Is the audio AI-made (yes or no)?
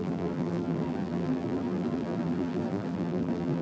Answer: yes